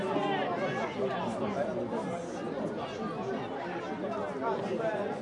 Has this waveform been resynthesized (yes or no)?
no